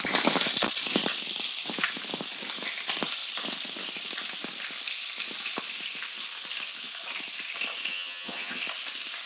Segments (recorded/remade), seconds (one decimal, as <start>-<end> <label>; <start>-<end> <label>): 0.0-7.9 recorded; 7.9-8.6 remade; 8.6-9.3 recorded